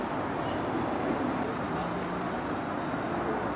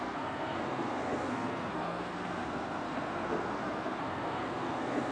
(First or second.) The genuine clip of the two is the first